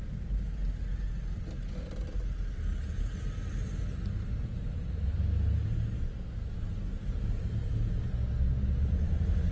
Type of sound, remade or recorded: recorded